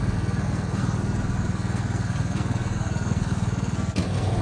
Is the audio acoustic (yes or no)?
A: no